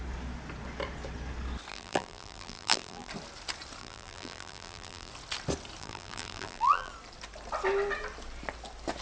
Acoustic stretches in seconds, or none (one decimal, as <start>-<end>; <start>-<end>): 0.0-1.7; 3.1-3.8; 5.1-5.8; 6.9-9.0